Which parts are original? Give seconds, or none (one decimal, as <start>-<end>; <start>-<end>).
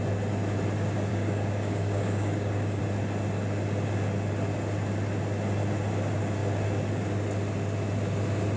0.0-1.1; 2.8-8.6